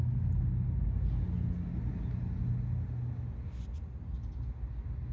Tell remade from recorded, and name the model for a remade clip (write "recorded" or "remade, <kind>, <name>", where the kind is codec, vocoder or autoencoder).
recorded